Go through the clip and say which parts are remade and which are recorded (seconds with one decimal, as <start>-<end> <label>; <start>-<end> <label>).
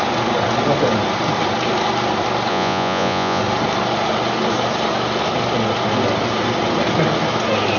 0.0-2.5 recorded; 2.5-3.4 remade; 3.4-7.8 recorded